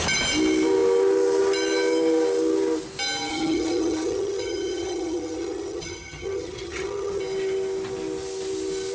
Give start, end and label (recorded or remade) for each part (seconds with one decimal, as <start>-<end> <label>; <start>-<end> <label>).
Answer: 0.0-3.3 recorded; 3.3-7.2 remade; 7.2-8.9 recorded

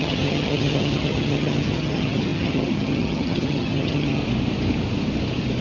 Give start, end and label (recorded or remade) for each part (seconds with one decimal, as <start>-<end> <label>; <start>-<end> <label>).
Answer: 0.0-4.2 remade; 4.2-5.6 recorded

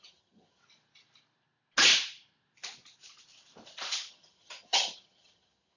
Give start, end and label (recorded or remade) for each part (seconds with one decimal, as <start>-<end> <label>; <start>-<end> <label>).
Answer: 0.0-0.6 remade; 0.6-4.1 recorded; 4.1-5.8 remade